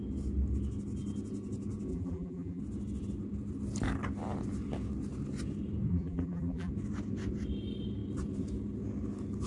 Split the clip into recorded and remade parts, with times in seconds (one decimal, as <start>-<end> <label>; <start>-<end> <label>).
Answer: 0.0-1.9 recorded; 1.9-2.6 remade; 2.6-5.9 recorded; 5.9-6.7 remade; 6.7-9.5 recorded